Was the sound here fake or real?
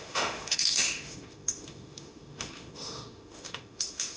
fake